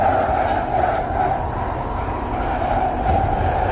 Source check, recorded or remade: recorded